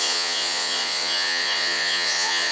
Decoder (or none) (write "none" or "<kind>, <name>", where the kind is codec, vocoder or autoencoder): vocoder, Vocos